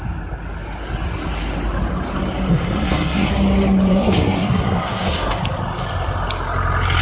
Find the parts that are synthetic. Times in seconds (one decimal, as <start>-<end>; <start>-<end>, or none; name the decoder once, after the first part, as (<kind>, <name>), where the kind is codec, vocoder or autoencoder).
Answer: 2.5-3.3 (codec, SNAC); 3.9-5.4